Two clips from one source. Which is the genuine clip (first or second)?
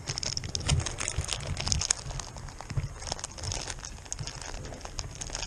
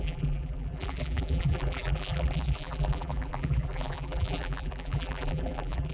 first